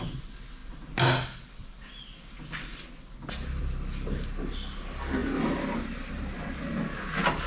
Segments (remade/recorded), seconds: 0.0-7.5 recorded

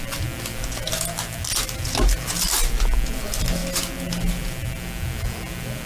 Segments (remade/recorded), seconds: 0.0-5.9 recorded